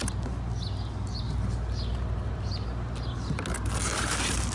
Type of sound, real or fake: real